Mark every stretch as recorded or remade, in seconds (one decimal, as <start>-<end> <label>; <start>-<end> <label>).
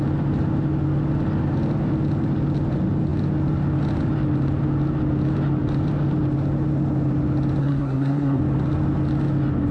0.0-7.6 recorded; 7.6-8.4 remade; 8.4-9.7 recorded